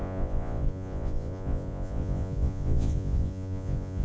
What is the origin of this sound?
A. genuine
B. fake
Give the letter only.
B